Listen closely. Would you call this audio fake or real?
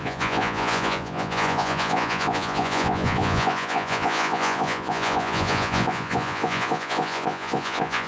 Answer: fake